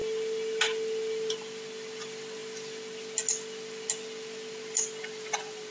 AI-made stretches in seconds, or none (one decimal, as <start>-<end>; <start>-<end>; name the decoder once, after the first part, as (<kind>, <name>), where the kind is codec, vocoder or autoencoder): none

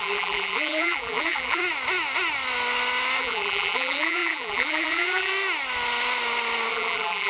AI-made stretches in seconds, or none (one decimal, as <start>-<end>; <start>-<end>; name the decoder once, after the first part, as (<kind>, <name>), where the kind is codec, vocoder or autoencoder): 0.0-1.6 (vocoder, BigVGAN v2); 3.2-5.3; 6.7-7.3